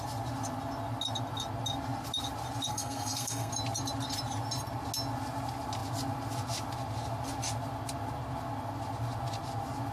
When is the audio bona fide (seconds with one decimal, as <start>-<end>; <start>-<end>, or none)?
0.0-2.7; 3.5-9.9